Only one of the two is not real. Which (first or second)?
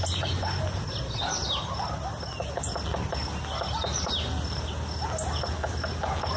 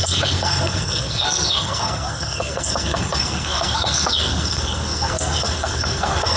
second